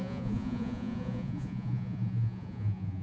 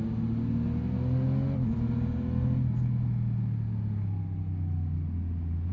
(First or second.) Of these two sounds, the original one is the second